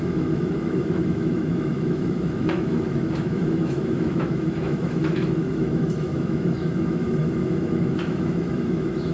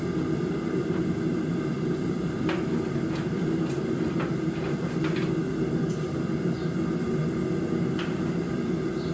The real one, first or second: second